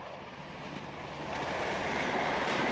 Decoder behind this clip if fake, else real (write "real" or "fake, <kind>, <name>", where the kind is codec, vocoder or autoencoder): fake, vocoder, BigVGAN v2